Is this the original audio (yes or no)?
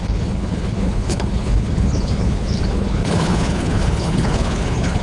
no